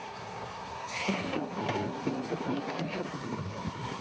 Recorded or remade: remade